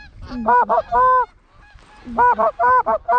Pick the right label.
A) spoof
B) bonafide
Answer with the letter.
B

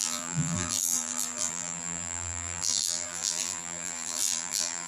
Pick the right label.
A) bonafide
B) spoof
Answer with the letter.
B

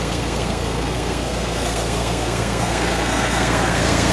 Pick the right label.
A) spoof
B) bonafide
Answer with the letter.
A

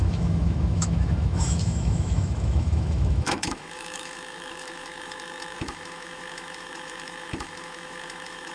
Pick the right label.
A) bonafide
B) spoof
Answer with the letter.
B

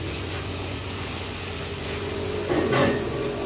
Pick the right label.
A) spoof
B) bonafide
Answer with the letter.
A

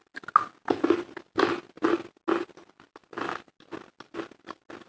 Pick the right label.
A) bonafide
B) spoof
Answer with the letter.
A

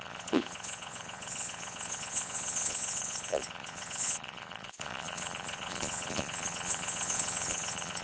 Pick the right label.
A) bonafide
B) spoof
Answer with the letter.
B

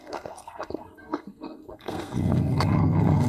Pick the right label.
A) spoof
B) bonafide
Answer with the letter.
A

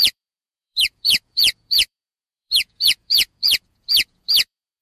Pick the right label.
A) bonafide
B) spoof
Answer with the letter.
B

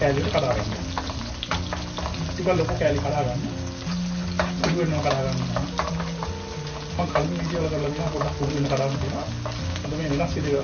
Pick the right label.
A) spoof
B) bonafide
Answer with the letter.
B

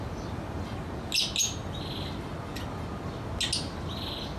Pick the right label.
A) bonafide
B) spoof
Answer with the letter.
A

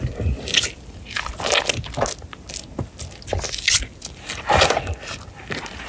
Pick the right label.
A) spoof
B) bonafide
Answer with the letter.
B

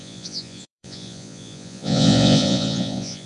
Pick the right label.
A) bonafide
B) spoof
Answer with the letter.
B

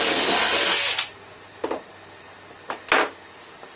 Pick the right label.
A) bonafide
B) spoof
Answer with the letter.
A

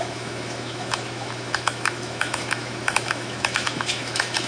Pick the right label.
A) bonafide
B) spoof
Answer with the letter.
B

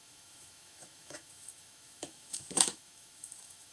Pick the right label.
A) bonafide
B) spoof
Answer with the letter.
B